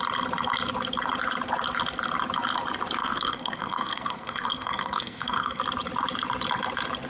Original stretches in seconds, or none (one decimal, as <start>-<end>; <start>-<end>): 0.0-3.0; 5.6-7.1